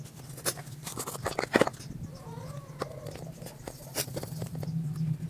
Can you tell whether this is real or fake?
real